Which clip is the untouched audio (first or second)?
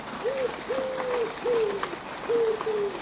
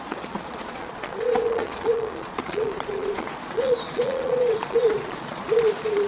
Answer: first